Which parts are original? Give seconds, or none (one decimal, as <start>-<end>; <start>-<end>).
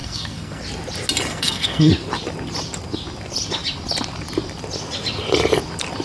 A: 0.6-1.3; 1.9-6.0